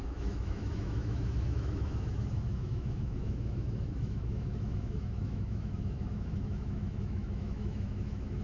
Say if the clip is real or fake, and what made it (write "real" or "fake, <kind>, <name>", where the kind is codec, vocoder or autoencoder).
fake, autoencoder, DAC-VAE